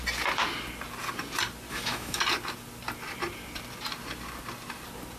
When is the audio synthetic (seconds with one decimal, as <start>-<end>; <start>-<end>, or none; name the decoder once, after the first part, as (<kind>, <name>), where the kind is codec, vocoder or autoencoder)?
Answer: 1.7-2.2 (autoencoder, DAC-VAE)